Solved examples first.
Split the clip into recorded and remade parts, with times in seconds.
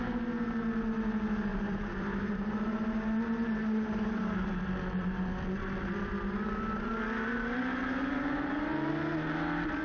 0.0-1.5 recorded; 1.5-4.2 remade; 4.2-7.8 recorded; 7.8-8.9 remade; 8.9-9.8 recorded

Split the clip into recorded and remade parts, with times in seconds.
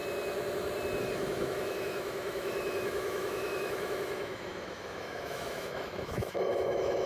0.0-1.0 recorded; 1.0-7.1 remade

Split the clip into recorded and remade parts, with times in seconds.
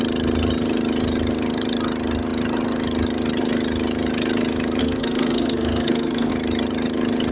0.0-4.8 recorded; 4.8-6.3 remade; 6.3-7.3 recorded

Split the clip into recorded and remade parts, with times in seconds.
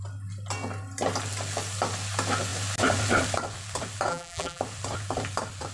0.0-4.1 recorded; 4.1-4.6 remade; 4.6-5.7 recorded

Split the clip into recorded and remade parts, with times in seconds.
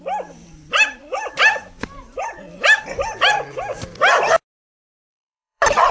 0.0-5.1 recorded; 5.1-5.9 remade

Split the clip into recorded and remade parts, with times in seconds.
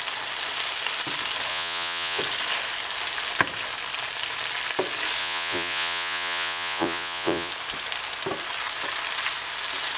0.0-1.5 recorded; 1.5-2.2 remade; 2.2-5.2 recorded; 5.2-7.5 remade; 7.5-10.0 recorded